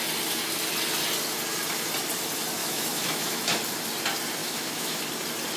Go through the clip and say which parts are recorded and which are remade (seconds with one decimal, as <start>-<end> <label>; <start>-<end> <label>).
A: 0.0-2.6 recorded; 2.6-3.5 remade; 3.5-4.4 recorded; 4.4-5.0 remade; 5.0-5.6 recorded